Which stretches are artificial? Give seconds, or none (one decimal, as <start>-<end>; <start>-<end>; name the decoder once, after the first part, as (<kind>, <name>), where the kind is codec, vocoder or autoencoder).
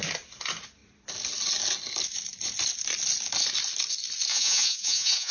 4.3-5.3 (vocoder, Vocos)